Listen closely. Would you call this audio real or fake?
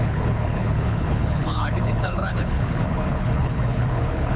fake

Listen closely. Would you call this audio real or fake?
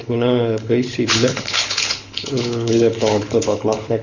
fake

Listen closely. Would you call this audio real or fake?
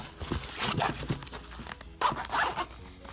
real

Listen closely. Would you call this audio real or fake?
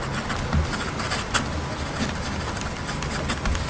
real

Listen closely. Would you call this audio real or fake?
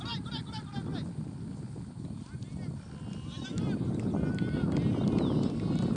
real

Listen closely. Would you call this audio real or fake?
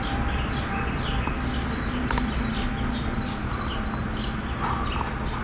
real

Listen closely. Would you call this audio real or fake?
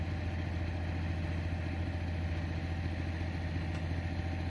real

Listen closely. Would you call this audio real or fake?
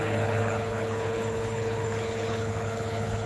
fake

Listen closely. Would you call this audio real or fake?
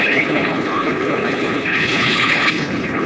fake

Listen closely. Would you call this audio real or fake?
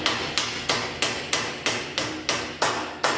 real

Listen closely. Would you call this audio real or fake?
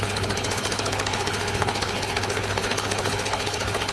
fake